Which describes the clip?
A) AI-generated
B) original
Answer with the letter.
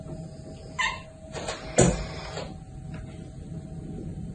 B